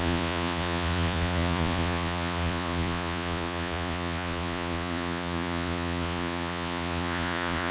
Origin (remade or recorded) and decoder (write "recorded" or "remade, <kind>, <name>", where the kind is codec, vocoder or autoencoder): remade, vocoder, Vocos